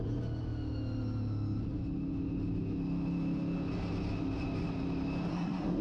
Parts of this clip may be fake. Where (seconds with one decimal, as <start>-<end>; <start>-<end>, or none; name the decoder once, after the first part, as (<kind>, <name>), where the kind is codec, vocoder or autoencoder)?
5.3-5.8 (codec, SNAC)